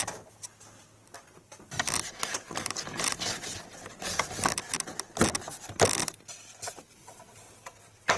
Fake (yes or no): no